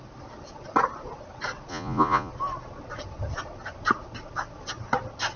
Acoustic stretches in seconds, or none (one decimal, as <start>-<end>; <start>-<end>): 0.0-1.7; 2.3-5.4